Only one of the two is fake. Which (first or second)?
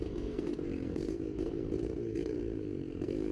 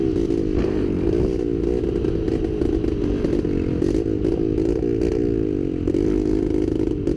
first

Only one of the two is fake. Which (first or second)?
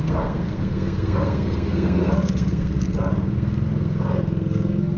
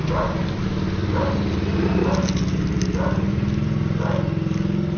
first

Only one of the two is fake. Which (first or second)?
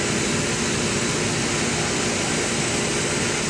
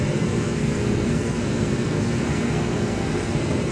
second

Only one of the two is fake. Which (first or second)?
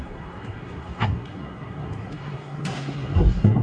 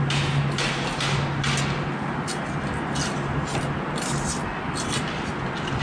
first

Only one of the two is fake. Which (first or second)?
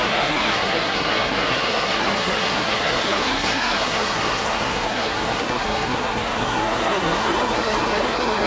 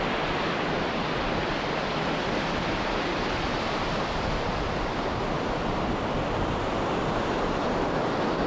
first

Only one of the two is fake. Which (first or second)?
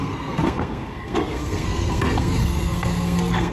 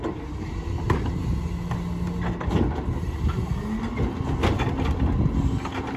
first